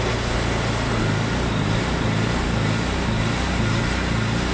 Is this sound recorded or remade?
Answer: recorded